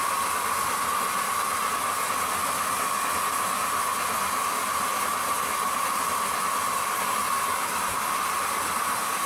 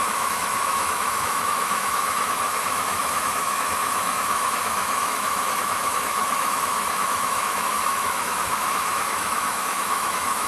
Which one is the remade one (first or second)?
second